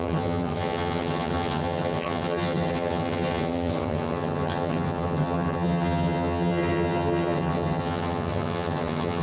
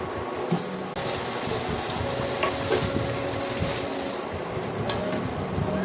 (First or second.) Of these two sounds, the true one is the second